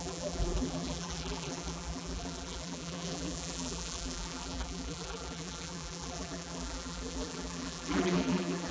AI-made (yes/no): yes